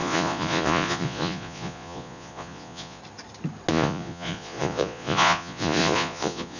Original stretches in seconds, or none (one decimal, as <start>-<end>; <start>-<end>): 3.0-3.7